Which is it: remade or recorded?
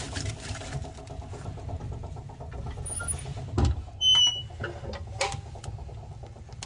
recorded